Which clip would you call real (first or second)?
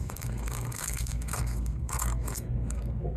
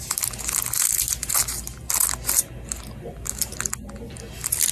second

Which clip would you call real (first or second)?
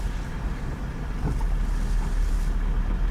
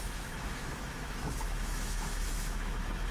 first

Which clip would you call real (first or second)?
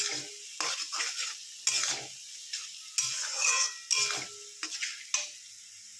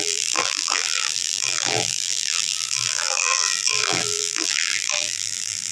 first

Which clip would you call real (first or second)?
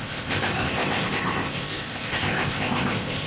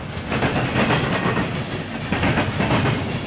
second